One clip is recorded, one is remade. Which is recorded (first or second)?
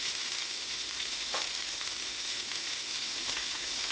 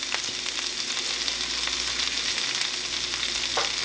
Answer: second